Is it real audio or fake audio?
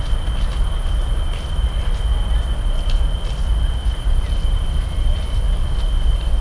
real